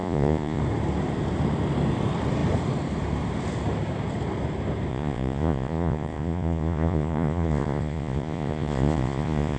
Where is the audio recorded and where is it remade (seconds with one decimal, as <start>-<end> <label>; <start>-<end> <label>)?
0.0-0.6 remade; 0.6-4.9 recorded; 4.9-9.6 remade